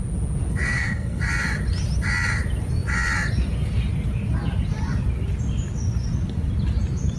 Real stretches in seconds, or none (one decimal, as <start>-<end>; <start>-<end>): 0.0-0.5; 1.2-7.2